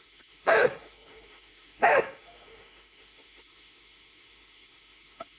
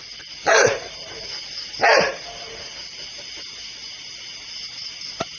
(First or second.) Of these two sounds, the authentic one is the second